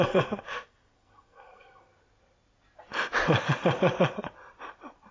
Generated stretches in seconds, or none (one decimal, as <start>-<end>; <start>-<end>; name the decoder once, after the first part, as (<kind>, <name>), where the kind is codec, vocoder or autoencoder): 0.0-1.9 (codec, SNAC)